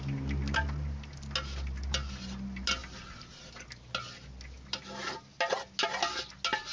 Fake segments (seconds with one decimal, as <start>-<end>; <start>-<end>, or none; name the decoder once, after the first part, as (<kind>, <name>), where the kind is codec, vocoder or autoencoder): none